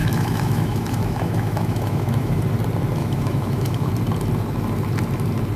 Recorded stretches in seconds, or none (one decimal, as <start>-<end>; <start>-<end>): 2.4-3.0; 3.9-5.6